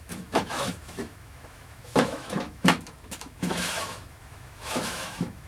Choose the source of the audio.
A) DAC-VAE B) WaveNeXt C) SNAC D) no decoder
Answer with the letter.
A